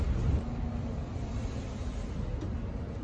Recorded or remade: recorded